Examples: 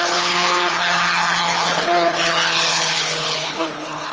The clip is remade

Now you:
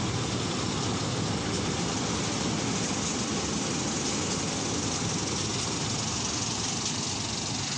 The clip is recorded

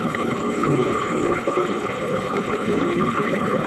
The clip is remade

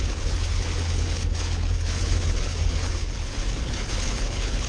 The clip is remade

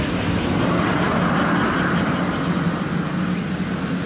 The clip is recorded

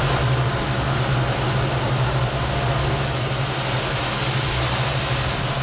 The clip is recorded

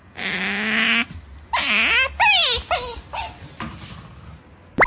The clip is recorded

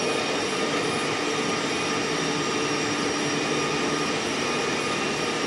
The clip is recorded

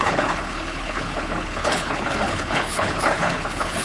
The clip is remade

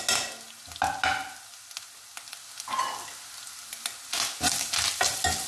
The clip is recorded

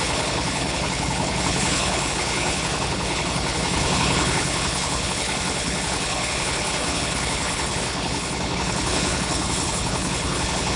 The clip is remade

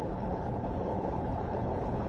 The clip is remade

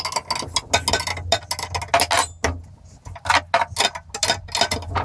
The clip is recorded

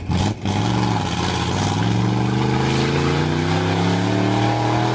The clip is recorded